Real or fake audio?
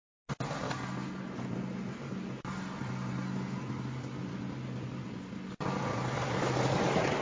real